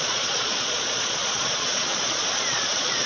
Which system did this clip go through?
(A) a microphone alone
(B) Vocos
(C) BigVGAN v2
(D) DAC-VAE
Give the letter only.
B